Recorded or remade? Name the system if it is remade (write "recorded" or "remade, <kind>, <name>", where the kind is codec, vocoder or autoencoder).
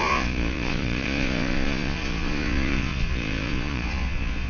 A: remade, vocoder, Vocos